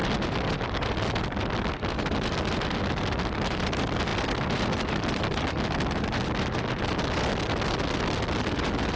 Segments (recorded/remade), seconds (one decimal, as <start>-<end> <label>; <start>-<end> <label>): 0.0-9.0 recorded